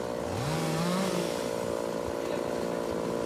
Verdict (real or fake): real